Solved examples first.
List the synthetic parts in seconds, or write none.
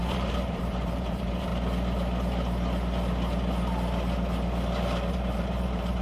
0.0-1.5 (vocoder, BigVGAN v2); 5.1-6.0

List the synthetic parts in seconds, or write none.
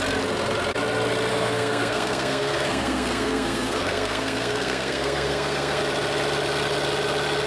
1.3-5.8 (codec, SNAC)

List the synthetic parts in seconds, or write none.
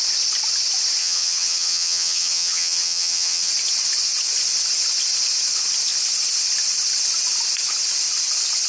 1.0-3.5 (vocoder, HiFi-GAN)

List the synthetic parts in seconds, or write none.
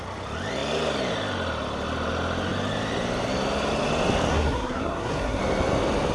4.3-5.4 (codec, SNAC)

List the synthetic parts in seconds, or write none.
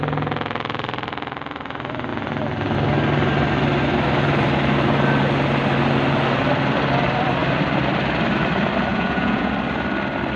8.9-9.5 (vocoder, Vocos)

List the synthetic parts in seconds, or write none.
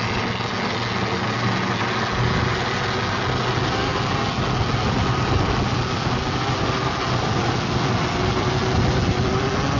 none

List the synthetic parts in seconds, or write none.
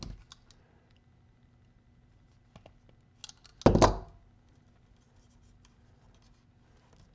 none